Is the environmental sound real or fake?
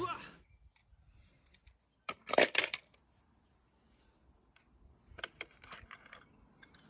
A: real